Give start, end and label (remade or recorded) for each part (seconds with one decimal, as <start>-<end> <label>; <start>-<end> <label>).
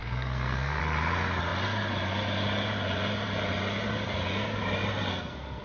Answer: 0.0-0.8 remade; 0.8-5.1 recorded; 5.1-5.6 remade